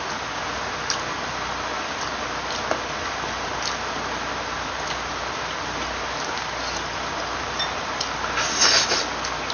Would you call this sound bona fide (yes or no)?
yes